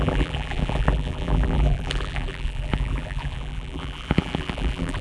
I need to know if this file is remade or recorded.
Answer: remade